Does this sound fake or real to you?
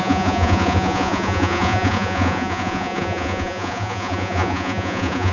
fake